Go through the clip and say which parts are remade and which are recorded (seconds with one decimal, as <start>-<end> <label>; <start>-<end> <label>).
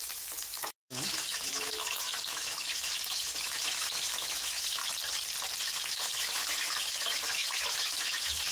0.0-4.8 remade; 4.8-5.6 recorded; 5.6-8.5 remade